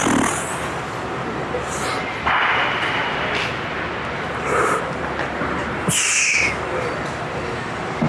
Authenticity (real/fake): real